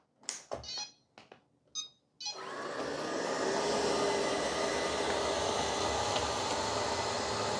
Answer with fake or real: real